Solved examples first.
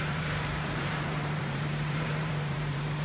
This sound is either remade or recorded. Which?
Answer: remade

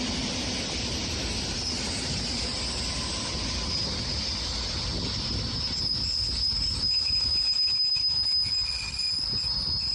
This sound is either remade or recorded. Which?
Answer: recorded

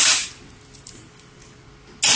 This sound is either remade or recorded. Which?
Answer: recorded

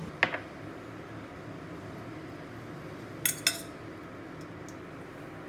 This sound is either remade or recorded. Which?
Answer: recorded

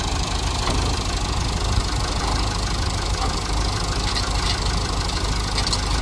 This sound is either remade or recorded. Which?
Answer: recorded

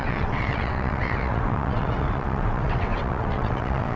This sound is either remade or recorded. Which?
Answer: remade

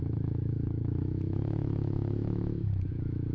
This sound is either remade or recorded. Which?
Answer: remade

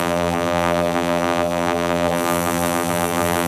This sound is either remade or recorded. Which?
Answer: remade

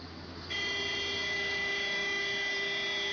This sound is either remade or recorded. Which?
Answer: recorded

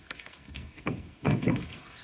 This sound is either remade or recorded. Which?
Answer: remade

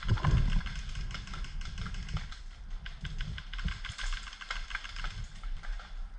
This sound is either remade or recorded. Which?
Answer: recorded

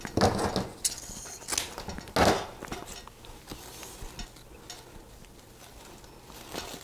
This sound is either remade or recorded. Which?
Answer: recorded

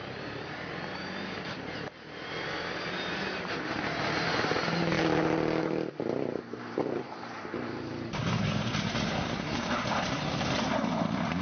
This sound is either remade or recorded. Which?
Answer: remade